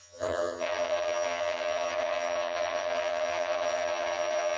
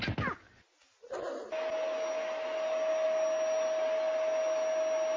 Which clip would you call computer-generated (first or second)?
first